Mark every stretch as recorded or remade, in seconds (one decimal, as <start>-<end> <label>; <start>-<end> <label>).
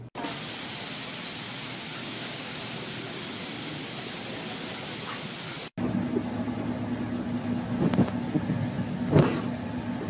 0.0-2.0 recorded; 2.0-2.6 remade; 2.6-10.1 recorded